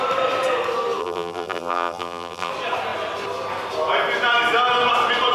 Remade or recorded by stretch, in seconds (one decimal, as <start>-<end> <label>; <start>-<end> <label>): 0.0-1.0 recorded; 1.0-2.5 remade; 2.5-5.3 recorded